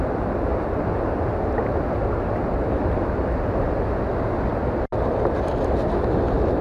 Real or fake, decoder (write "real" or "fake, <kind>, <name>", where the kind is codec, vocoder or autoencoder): real